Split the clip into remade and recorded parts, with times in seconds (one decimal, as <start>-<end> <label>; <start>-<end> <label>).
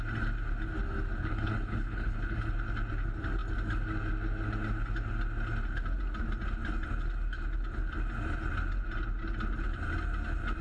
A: 0.0-1.2 recorded; 1.2-2.5 remade; 2.5-10.6 recorded